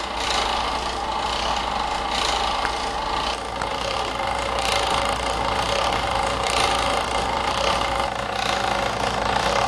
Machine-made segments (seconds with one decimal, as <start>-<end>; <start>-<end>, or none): 3.7-7.9